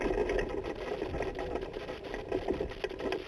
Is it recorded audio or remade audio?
recorded